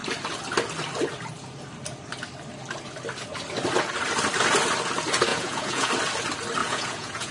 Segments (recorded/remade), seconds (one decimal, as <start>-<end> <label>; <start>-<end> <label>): 0.0-5.3 recorded; 5.3-5.9 remade; 5.9-6.6 recorded; 6.6-7.3 remade